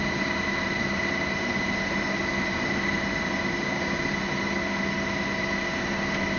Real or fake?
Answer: real